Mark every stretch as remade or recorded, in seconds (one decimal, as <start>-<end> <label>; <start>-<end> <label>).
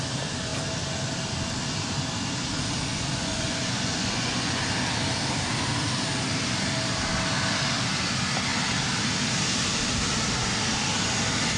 0.0-2.9 recorded; 2.9-4.6 remade; 4.6-11.6 recorded